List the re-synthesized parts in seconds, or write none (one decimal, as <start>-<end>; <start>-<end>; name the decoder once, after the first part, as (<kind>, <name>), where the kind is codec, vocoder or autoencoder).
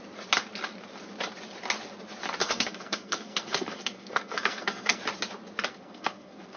2.4-5.0 (codec, SNAC); 5.7-6.6